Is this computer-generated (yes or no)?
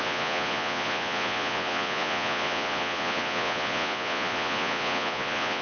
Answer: yes